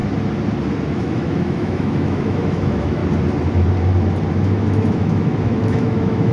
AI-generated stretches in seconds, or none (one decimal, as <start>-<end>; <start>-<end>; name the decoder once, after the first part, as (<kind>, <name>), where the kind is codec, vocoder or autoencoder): 0.9-3.0 (autoencoder, DAC-VAE); 4.3-6.3